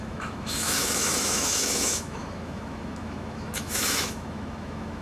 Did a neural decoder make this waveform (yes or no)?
yes